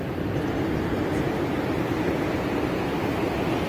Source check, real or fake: real